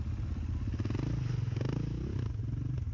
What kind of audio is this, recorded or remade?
recorded